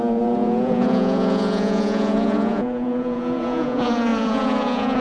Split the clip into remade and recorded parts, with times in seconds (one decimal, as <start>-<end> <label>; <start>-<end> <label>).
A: 0.0-5.0 remade